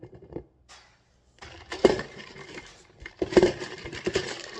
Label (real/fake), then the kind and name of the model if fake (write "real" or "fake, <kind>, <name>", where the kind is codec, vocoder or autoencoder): fake, vocoder, BigVGAN v2